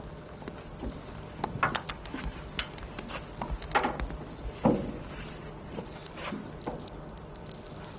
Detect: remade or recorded recorded